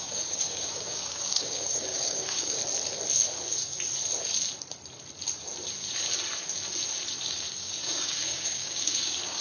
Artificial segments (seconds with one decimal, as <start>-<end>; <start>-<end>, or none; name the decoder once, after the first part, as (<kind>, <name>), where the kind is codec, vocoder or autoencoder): 0.0-2.6 (codec, DAC); 7.5-9.4